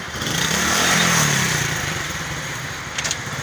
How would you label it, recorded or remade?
remade